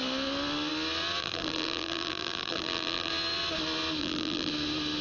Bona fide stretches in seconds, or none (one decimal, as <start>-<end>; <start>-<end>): 0.0-1.2; 3.1-4.0; 4.5-5.0